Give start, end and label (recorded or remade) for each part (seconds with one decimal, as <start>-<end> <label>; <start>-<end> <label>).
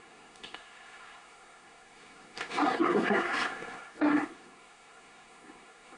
0.0-6.0 remade